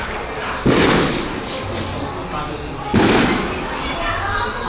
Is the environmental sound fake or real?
real